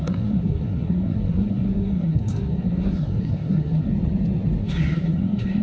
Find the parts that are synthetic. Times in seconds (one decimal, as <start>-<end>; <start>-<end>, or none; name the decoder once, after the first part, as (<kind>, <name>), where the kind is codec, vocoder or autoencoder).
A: 0.0-3.9 (codec, SNAC); 4.6-5.6